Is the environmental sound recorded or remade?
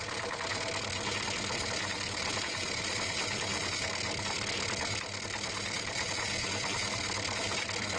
recorded